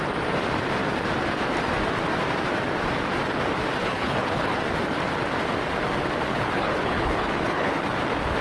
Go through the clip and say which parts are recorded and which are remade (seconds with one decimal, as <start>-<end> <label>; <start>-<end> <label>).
0.0-3.8 recorded; 3.8-4.5 remade; 4.5-6.3 recorded; 6.3-7.7 remade; 7.7-8.4 recorded